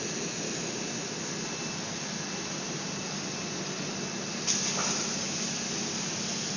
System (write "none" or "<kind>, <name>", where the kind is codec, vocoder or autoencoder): none